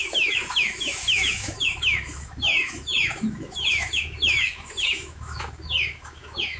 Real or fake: fake